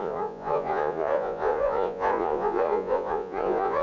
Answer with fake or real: fake